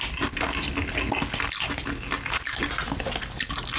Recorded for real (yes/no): yes